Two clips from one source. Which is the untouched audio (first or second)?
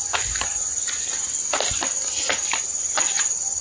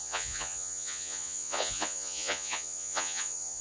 first